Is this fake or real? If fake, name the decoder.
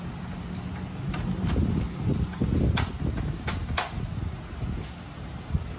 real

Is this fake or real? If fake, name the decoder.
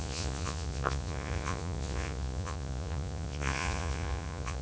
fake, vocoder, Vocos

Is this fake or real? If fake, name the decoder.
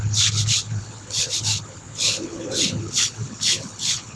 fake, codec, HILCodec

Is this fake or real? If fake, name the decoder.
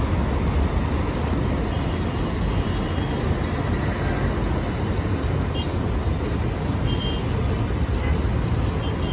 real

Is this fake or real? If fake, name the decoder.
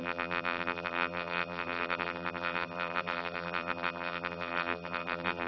fake, vocoder, BigVGAN v2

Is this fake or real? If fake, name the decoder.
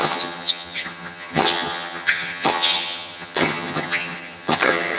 fake, vocoder, HiFi-GAN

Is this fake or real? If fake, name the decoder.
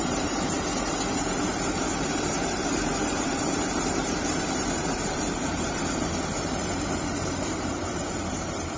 fake, vocoder, BigVGAN v2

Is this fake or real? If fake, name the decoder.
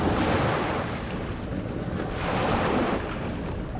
real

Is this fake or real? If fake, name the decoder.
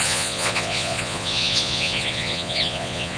fake, vocoder, Vocos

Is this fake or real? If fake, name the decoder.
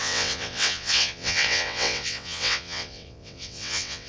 fake, vocoder, WaveNeXt